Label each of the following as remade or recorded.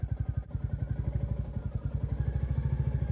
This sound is recorded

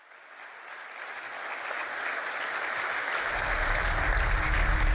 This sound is recorded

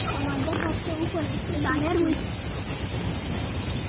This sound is recorded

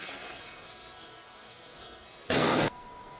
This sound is remade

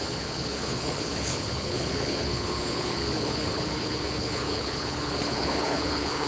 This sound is remade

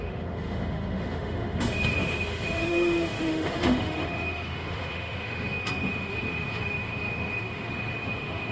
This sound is remade